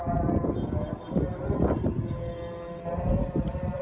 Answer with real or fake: real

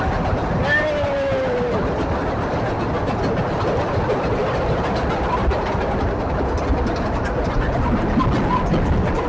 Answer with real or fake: real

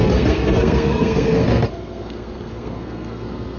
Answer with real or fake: fake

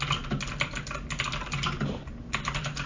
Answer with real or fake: real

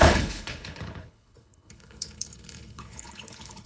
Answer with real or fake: fake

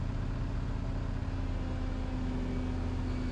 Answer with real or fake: real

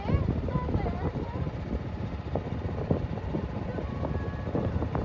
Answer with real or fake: real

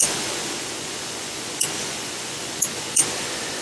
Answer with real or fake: fake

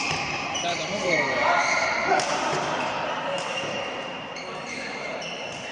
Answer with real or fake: fake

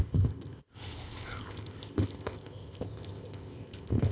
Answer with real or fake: fake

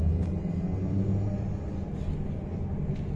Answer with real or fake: real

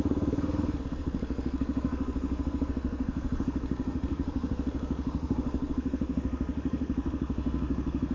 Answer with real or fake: fake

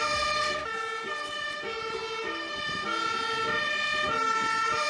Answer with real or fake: real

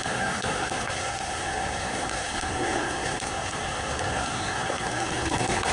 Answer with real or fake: fake